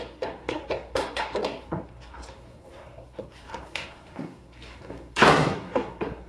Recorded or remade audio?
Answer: remade